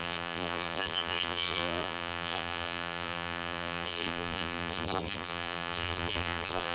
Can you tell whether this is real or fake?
fake